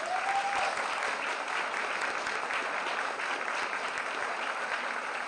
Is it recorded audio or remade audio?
recorded